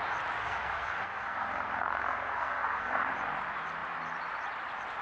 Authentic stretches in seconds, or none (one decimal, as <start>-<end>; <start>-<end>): 0.0-0.4; 3.1-5.0